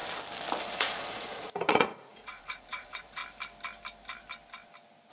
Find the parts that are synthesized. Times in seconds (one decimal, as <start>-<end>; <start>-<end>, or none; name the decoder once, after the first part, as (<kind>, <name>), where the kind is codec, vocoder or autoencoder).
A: 0.6-3.2 (vocoder, Vocos)